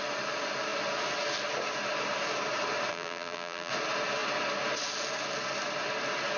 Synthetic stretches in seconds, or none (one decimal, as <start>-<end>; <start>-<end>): 2.9-3.7